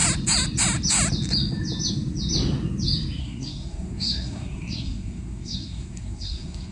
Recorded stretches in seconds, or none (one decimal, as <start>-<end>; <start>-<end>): 0.0-3.2